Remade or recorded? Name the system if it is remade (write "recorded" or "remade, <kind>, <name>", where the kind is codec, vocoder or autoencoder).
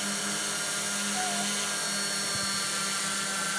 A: recorded